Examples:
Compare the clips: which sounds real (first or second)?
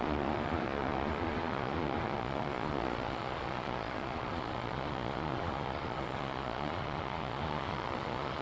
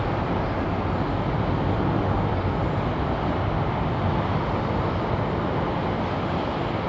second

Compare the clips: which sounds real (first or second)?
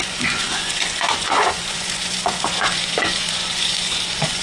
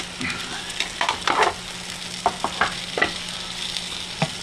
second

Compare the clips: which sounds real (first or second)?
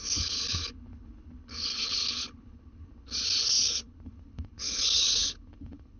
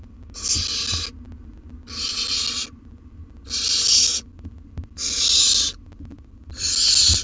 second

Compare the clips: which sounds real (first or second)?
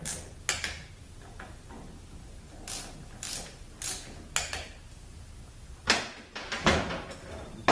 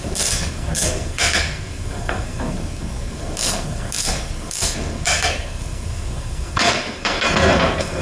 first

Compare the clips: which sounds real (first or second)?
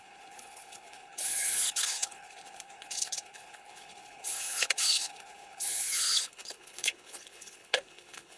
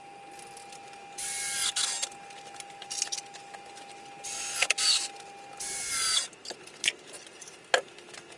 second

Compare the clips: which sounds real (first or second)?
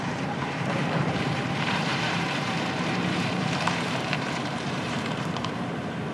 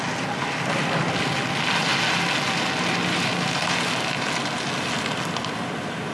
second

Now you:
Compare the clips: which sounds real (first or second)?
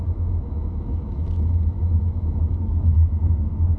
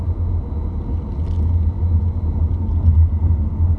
second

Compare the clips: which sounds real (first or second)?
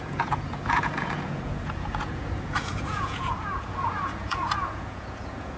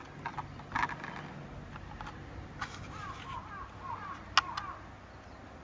second